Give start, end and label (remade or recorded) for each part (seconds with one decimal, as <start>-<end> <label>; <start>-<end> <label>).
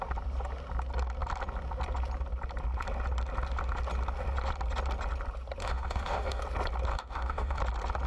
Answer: 0.0-5.6 recorded; 5.6-6.4 remade; 6.4-6.9 recorded; 6.9-7.6 remade; 7.6-8.1 recorded